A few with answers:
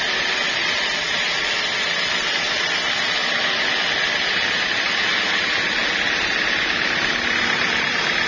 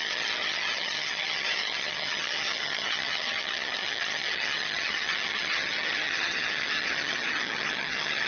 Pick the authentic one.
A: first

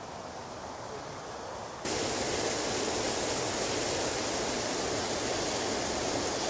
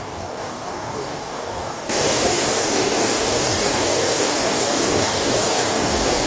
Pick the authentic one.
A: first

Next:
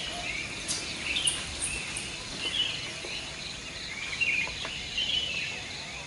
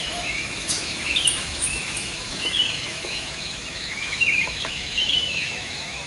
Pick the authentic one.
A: first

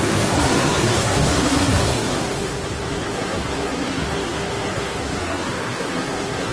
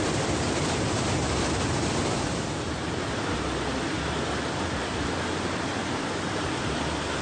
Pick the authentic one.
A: second